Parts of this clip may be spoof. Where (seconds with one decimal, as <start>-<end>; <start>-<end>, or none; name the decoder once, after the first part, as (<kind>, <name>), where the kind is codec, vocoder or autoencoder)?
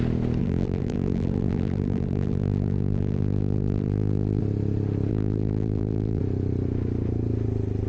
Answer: 0.4-4.4 (vocoder, BigVGAN v2); 5.1-6.2